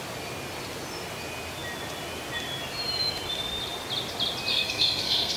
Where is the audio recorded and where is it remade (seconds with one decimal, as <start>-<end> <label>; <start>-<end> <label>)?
0.0-4.5 recorded; 4.5-5.4 remade